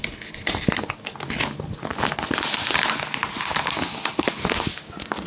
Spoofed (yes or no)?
no